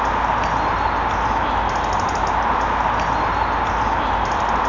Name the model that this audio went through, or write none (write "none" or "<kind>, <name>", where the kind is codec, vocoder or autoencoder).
none